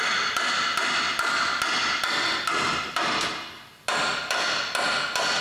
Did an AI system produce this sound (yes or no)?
no